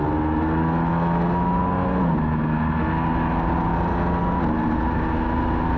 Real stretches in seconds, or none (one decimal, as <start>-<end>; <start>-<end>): 0.0-5.8